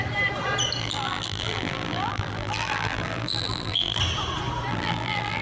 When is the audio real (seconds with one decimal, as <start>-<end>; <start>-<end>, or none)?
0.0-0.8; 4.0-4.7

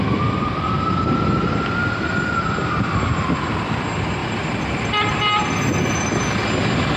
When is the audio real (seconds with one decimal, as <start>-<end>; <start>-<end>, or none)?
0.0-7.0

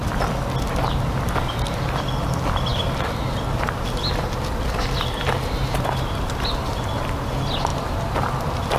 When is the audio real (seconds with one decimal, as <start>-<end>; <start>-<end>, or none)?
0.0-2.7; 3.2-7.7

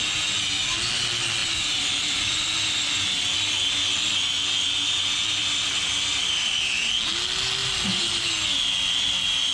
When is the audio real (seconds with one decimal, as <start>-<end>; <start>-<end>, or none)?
0.0-1.4; 3.2-5.4; 6.3-7.6; 8.3-9.5

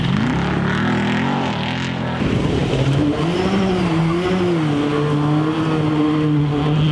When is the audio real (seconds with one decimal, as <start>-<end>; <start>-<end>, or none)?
0.0-2.6; 4.0-6.9

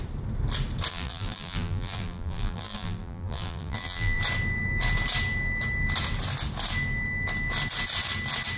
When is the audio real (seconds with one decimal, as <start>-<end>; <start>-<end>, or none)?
0.0-0.9; 4.2-8.6

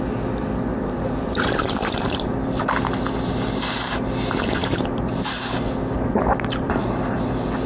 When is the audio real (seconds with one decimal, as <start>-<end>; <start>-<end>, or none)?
0.0-0.7; 4.0-4.6; 7.2-7.7